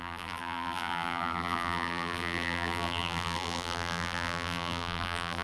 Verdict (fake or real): fake